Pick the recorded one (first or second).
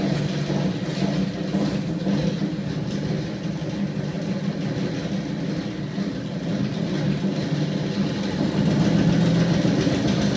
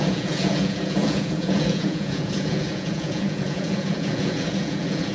first